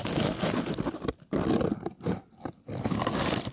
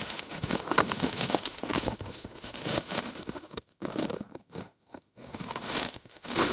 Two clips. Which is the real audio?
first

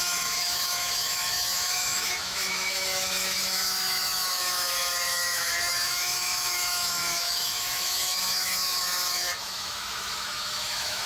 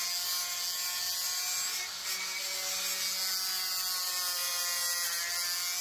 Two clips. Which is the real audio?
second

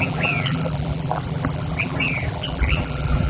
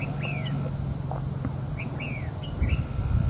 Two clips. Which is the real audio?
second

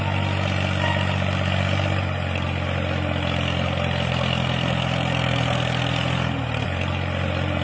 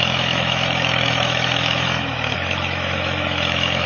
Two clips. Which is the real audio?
first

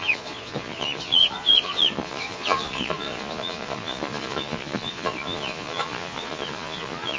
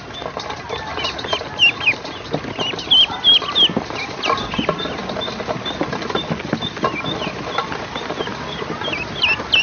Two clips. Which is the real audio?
second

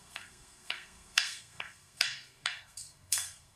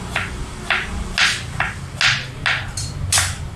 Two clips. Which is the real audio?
second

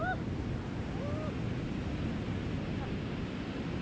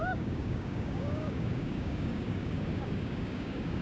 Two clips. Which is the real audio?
first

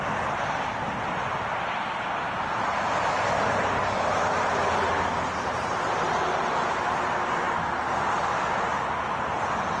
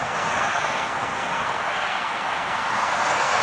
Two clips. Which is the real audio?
first